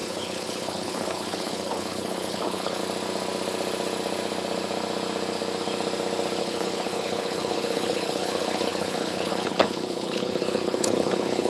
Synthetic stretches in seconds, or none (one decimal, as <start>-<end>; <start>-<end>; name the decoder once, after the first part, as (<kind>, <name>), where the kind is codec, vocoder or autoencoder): 0.0-2.8 (codec, HILCodec); 6.4-11.5